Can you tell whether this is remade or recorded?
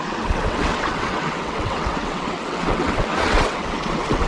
remade